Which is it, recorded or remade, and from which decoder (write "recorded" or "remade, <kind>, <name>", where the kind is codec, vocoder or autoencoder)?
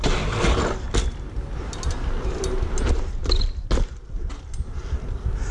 recorded